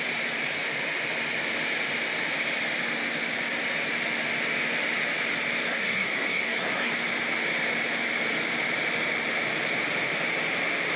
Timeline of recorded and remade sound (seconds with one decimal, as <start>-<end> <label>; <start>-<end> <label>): 0.0-5.7 recorded; 5.7-6.9 remade; 6.9-11.0 recorded